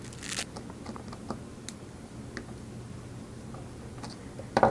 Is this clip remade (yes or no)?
no